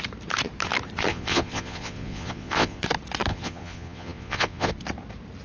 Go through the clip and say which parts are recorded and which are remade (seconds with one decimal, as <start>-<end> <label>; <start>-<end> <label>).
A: 0.0-1.1 recorded; 1.1-2.8 remade; 2.8-3.3 recorded; 3.3-4.7 remade; 4.7-5.4 recorded